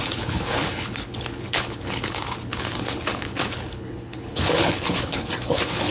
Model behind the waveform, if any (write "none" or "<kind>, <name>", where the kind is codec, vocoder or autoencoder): codec, HILCodec